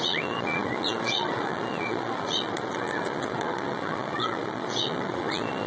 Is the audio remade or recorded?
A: remade